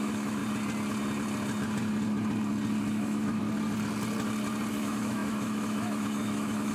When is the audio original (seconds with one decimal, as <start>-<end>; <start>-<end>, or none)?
0.4-2.9; 3.4-4.7